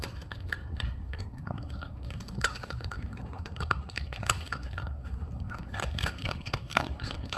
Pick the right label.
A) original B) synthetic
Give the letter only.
B